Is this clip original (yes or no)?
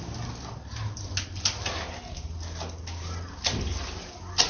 yes